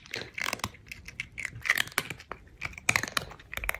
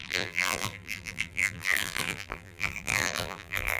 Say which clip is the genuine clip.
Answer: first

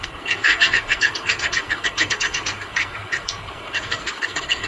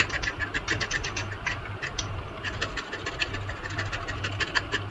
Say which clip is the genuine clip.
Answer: second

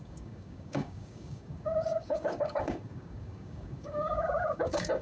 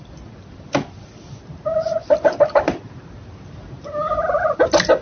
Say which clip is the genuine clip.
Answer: second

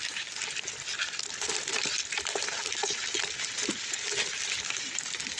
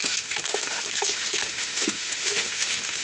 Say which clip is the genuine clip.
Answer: first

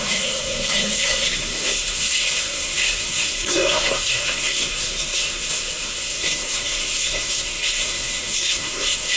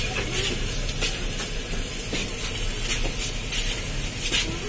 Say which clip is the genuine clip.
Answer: second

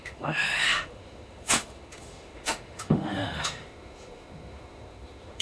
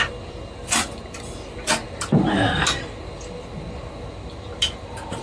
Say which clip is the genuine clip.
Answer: second